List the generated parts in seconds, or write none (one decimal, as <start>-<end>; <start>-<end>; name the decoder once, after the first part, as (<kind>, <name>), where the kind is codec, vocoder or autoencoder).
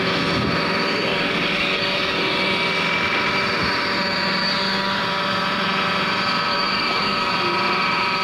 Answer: 1.1-2.2 (codec, DAC); 4.4-5.0; 6.5-7.3